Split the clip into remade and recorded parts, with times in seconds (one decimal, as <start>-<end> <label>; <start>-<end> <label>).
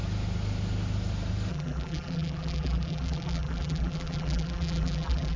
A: 0.0-1.5 recorded; 1.5-5.4 remade